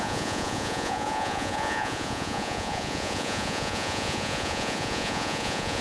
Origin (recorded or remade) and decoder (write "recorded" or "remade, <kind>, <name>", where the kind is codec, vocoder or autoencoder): remade, vocoder, Vocos